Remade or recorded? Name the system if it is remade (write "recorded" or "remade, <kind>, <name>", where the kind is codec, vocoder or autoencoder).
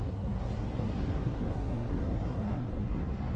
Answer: remade, codec, SNAC